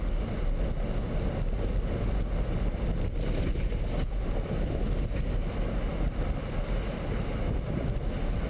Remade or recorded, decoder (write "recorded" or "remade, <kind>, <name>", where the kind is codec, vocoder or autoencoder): recorded